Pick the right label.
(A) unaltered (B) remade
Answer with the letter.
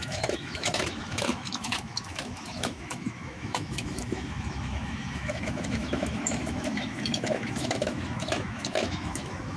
B